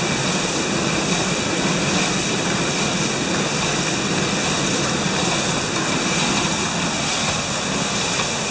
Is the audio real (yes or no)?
yes